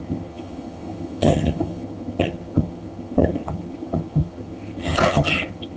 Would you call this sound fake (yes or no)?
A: yes